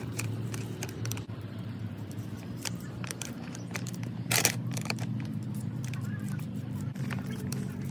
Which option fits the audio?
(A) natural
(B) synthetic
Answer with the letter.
B